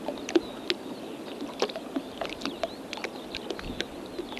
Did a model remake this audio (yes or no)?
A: no